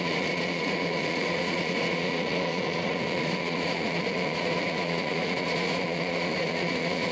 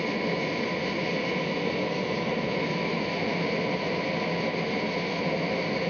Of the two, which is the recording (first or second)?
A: second